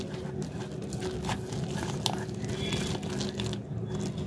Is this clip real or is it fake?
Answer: real